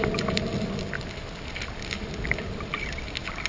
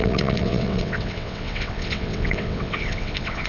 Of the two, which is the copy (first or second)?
second